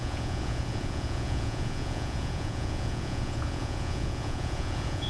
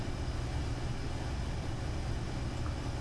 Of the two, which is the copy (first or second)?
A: first